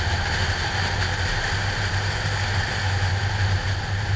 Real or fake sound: real